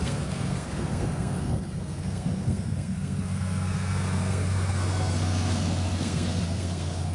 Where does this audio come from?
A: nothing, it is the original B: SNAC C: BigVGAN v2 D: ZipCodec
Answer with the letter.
B